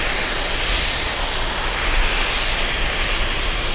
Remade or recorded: recorded